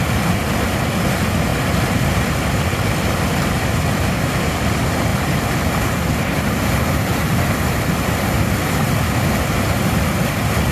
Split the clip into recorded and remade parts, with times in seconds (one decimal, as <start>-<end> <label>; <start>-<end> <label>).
0.0-5.1 recorded; 5.1-7.9 remade; 7.9-10.7 recorded

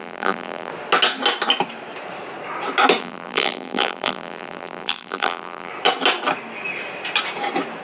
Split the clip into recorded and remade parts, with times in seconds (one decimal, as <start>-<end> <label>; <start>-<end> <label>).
0.0-0.7 remade; 0.7-3.0 recorded; 3.0-5.7 remade; 5.7-7.8 recorded